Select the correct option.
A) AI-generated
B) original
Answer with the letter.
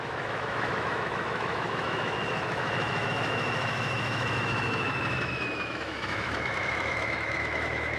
A